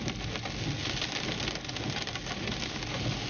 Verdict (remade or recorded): recorded